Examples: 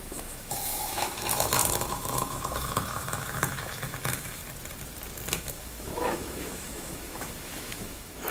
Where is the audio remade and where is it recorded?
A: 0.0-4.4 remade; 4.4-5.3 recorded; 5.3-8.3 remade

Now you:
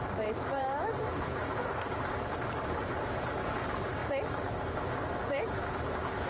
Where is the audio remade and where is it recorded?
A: 0.0-4.0 remade; 4.0-5.3 recorded; 5.3-6.3 remade

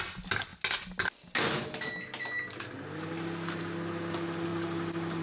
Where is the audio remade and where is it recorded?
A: 0.0-5.2 recorded

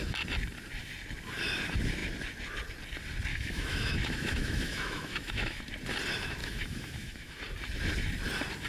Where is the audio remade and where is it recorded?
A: 0.0-3.3 recorded; 3.3-5.6 remade; 5.6-6.4 recorded; 6.4-7.4 remade; 7.4-8.7 recorded

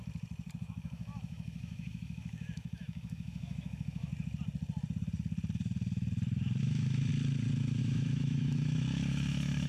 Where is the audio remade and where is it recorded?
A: 0.0-0.6 recorded; 0.6-4.1 remade; 4.1-6.6 recorded; 6.6-7.1 remade; 7.1-7.8 recorded; 7.8-9.7 remade